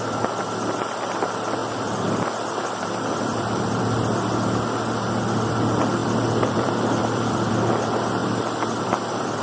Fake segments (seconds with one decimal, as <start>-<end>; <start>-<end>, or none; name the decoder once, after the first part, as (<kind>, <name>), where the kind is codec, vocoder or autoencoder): 1.6-3.8 (vocoder, BigVGAN v2); 6.0-7.5; 8.2-9.4

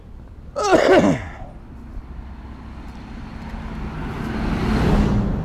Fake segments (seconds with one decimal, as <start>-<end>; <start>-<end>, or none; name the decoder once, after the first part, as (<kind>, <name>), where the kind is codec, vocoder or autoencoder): none

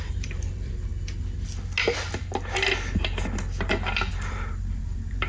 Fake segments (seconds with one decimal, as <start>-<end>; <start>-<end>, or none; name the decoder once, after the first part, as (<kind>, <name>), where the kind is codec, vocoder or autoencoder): 0.0-0.9 (vocoder, BigVGAN v2); 4.1-5.3